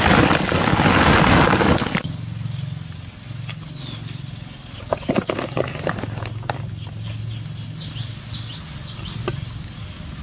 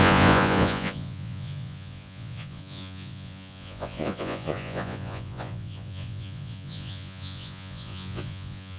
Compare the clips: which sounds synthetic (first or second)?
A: second